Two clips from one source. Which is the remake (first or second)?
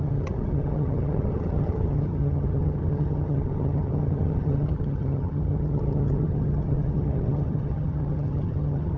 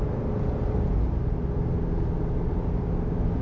first